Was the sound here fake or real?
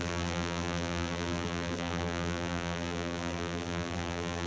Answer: fake